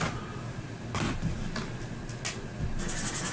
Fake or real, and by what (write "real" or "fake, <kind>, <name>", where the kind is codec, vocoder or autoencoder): real